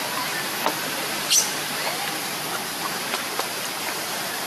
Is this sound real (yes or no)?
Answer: yes